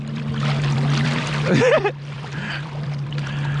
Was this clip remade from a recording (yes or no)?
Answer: yes